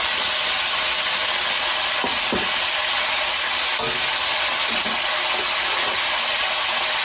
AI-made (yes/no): no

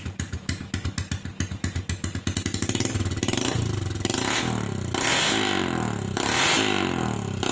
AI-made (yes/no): no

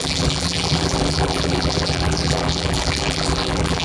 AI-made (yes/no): yes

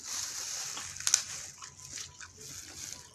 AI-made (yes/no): no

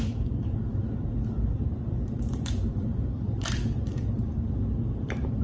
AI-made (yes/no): yes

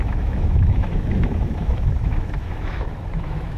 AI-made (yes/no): yes